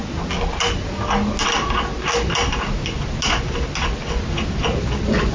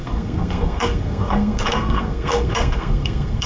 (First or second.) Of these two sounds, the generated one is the second